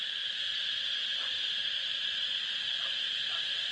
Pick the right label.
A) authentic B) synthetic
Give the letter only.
A